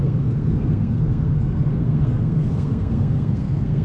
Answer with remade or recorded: remade